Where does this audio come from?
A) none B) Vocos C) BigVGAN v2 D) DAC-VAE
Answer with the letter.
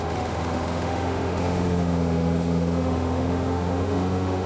D